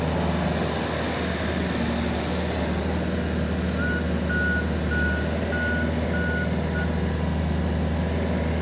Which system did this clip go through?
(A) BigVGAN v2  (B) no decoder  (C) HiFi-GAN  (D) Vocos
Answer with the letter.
B